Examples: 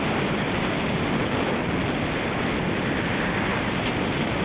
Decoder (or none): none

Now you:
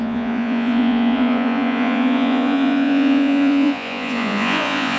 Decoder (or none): vocoder, Vocos